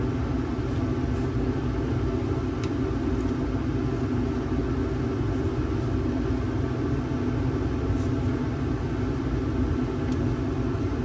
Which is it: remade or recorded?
recorded